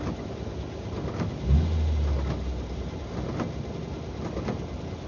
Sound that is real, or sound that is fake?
real